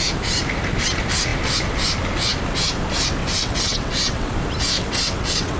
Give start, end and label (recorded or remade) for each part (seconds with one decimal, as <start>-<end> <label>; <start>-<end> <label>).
0.0-3.2 recorded; 3.2-4.3 remade; 4.3-4.8 recorded; 4.8-5.6 remade